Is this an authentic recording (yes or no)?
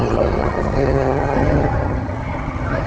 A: no